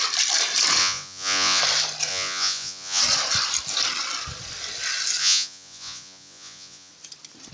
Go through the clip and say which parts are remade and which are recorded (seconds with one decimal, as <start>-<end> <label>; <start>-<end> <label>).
0.0-0.8 recorded; 0.8-1.6 remade; 1.6-2.1 recorded; 2.1-3.0 remade; 3.0-5.2 recorded; 5.2-6.9 remade; 6.9-7.5 recorded